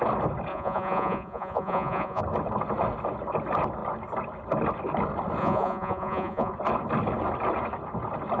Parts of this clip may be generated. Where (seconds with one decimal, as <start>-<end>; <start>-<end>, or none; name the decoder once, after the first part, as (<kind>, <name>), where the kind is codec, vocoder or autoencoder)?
0.5-2.2 (vocoder, Vocos); 5.4-6.5